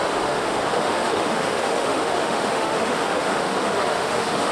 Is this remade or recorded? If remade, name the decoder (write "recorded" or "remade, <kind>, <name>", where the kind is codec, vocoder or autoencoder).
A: remade, autoencoder, DAC-VAE